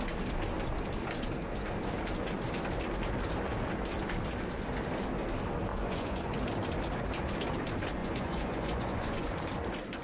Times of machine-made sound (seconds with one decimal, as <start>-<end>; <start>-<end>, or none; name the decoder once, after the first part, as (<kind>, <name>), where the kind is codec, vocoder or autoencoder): 5.7-6.3 (vocoder, Vocos); 8.0-9.3